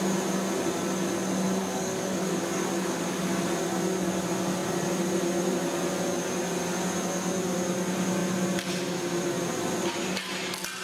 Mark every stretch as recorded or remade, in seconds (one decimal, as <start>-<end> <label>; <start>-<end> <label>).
0.0-1.6 recorded; 1.6-3.2 remade; 3.2-10.8 recorded